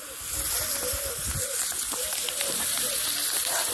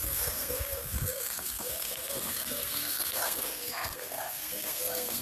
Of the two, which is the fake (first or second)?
second